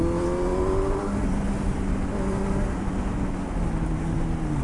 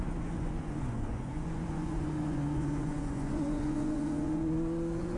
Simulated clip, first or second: second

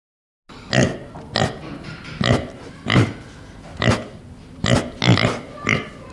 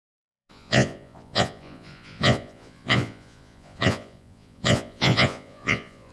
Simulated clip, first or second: second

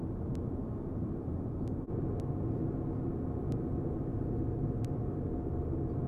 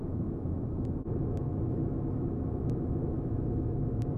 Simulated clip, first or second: second